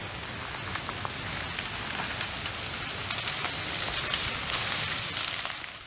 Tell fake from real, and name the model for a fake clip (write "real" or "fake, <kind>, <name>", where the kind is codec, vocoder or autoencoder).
real